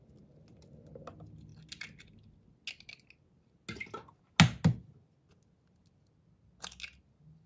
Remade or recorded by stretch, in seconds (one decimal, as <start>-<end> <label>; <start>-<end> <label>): 0.0-7.5 recorded